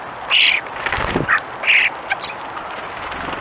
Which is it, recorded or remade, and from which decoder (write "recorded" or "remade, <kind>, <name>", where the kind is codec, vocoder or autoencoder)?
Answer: recorded